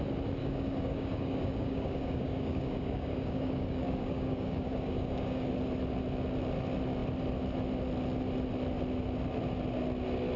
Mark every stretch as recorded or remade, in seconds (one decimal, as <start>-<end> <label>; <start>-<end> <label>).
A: 0.0-0.4 recorded; 0.4-5.5 remade; 5.5-10.4 recorded